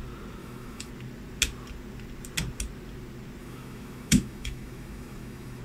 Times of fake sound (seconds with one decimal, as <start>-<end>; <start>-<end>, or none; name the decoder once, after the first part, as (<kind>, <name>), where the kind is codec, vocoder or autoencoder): 0.4-0.9 (autoencoder, DAC-VAE); 3.4-5.6